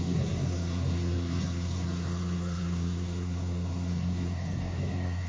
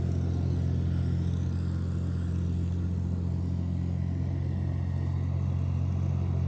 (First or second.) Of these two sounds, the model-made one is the first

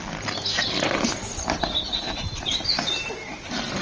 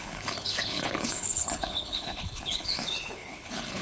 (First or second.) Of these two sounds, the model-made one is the second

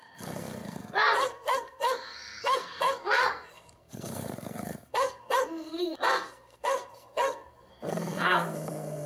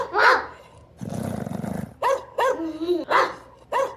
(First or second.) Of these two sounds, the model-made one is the first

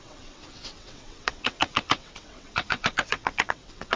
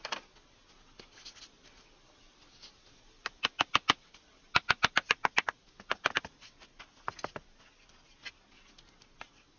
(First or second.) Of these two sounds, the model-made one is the first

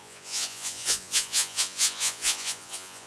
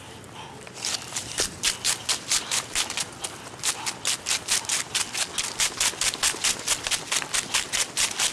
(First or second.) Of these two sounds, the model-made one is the first